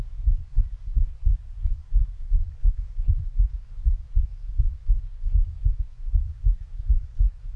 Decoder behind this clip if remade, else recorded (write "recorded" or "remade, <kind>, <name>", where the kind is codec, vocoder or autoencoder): remade, codec, SNAC